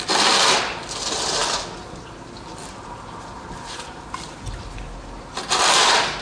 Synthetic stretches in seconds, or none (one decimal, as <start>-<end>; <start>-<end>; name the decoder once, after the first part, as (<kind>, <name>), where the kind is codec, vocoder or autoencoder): none